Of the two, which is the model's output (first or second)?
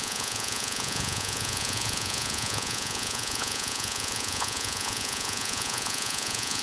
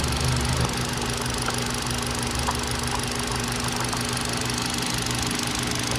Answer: first